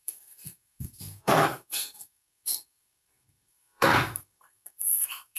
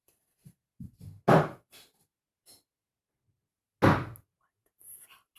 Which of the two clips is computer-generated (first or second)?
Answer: first